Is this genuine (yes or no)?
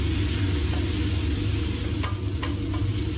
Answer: yes